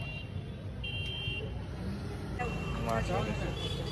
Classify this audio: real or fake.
real